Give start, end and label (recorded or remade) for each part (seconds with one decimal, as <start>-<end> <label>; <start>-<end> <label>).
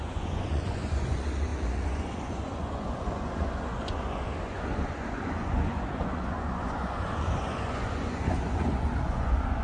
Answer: 0.0-9.6 remade